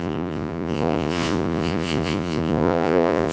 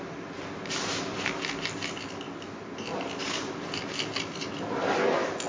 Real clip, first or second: second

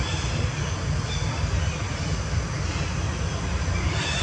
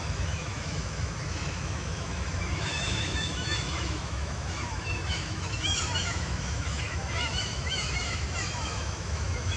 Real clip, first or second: first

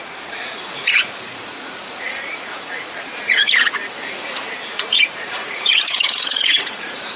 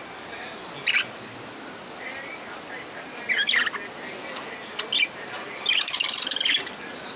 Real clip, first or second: second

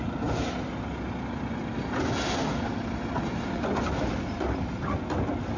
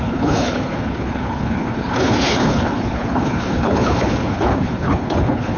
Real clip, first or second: first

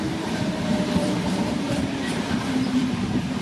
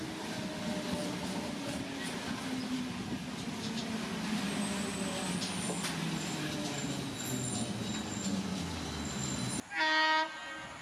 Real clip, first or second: second